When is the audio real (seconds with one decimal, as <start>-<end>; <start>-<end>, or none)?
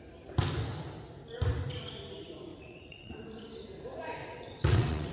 0.0-2.5; 3.2-4.2